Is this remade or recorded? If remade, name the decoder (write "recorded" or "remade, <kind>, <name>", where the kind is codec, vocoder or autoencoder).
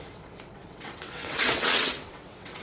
remade, vocoder, WaveNeXt